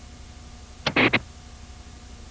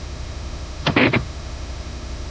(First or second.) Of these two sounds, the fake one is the second